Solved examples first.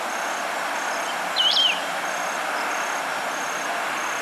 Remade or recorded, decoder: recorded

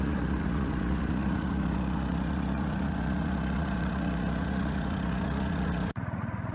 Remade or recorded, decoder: remade, vocoder, Vocos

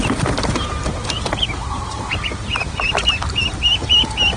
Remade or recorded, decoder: recorded